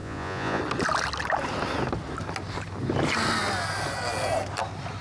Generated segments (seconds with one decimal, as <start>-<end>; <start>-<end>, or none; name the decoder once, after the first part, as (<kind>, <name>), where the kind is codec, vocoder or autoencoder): 0.0-0.6 (vocoder, Vocos)